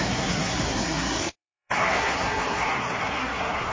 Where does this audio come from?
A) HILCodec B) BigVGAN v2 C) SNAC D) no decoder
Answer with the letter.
C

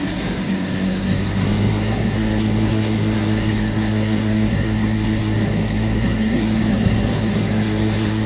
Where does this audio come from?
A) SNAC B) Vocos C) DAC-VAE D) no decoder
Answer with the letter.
A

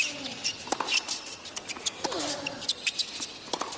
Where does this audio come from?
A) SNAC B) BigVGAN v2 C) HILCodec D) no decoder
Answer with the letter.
D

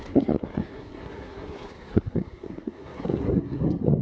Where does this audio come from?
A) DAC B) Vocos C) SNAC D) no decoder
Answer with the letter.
C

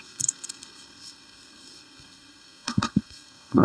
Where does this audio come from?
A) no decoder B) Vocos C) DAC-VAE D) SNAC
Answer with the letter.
D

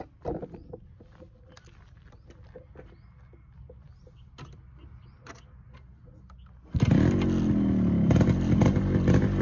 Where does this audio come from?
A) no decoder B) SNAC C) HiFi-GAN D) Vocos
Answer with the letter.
A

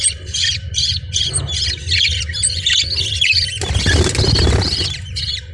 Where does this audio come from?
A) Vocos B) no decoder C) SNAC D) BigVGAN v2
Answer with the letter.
B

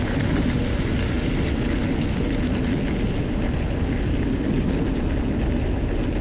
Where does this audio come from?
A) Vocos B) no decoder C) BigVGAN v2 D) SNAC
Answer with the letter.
B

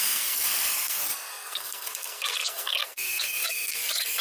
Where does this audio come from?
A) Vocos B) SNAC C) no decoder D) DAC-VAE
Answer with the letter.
B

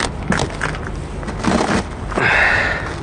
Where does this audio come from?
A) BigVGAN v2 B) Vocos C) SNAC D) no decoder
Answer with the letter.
D